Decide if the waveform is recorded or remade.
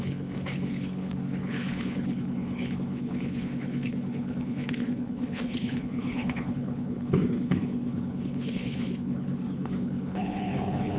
remade